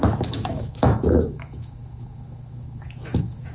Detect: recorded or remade remade